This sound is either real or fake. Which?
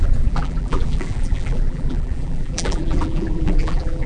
fake